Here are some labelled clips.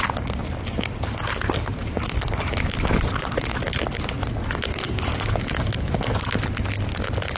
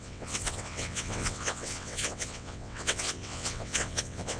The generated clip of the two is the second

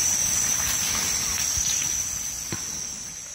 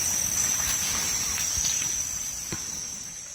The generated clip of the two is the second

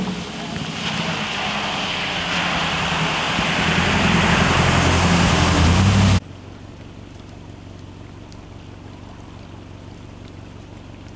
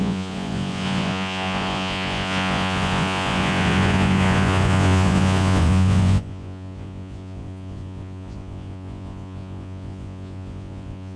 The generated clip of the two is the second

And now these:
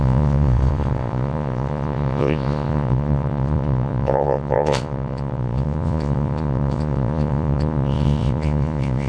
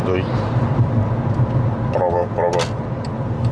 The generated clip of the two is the first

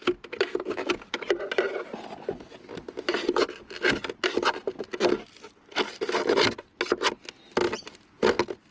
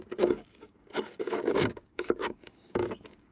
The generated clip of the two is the second